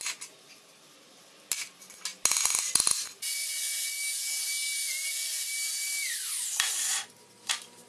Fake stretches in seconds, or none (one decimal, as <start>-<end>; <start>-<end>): none